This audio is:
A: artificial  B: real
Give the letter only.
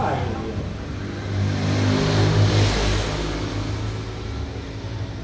B